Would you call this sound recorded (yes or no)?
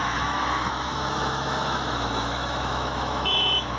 no